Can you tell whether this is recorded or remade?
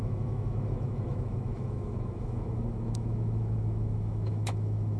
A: remade